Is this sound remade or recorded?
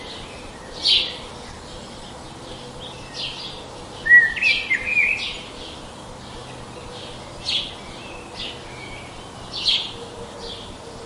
recorded